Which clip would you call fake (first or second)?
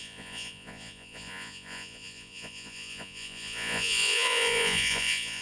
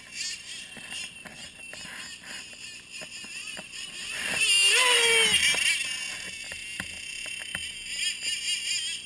first